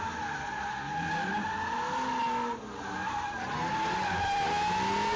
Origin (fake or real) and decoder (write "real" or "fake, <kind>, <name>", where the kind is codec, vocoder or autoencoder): real